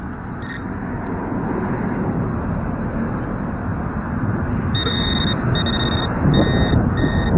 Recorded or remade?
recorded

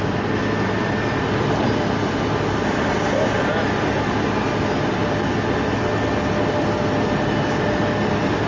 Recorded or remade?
recorded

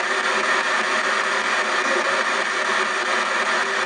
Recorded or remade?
recorded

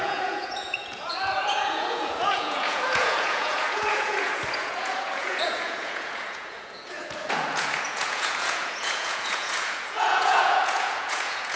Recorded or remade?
remade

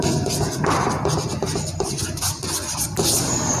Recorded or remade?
recorded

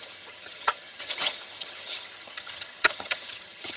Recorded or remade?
remade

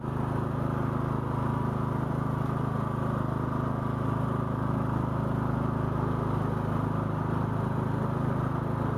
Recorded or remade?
recorded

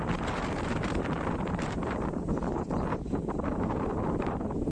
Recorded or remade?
remade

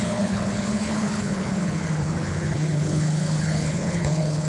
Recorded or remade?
remade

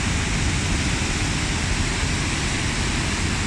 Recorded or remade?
recorded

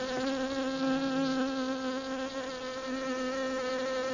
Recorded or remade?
recorded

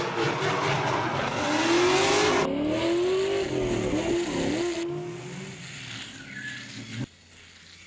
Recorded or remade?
recorded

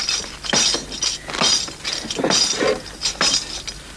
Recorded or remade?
recorded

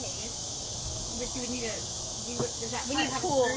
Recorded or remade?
remade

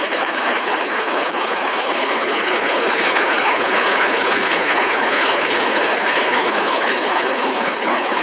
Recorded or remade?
remade